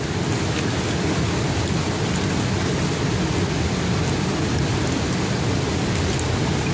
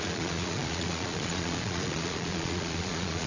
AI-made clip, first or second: second